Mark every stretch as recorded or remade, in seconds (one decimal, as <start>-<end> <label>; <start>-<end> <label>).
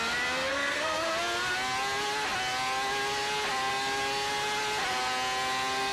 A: 0.0-0.5 recorded; 0.5-1.1 remade; 1.1-5.9 recorded